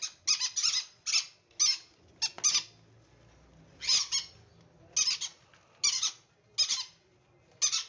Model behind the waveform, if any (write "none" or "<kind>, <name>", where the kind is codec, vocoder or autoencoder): none